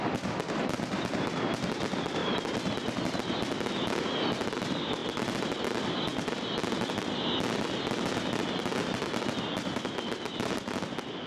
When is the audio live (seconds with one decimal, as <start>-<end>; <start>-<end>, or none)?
0.0-11.3